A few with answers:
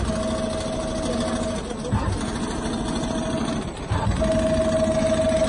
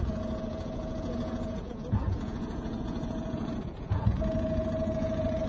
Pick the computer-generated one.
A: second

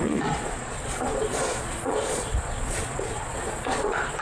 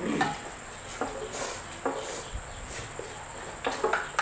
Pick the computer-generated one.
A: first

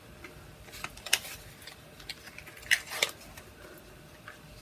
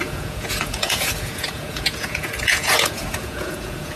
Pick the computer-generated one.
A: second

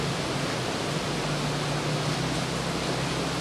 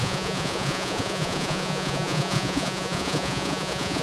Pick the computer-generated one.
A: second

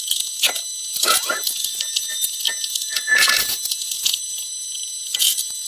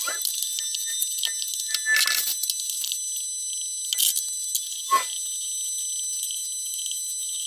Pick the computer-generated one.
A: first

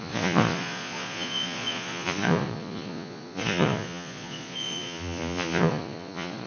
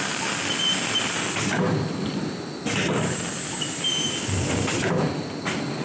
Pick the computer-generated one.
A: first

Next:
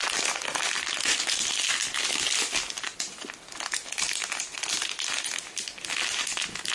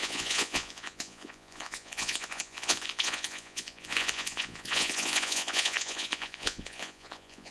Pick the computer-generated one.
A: second